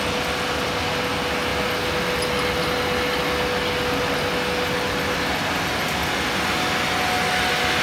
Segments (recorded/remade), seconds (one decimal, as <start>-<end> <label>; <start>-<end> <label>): 0.0-7.8 recorded